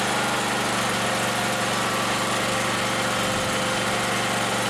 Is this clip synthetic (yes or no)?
no